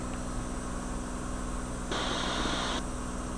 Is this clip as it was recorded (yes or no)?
yes